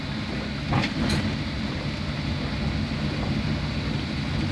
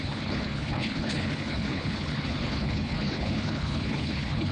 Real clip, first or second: first